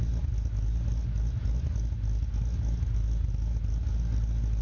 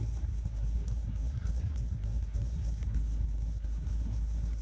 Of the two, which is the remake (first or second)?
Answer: second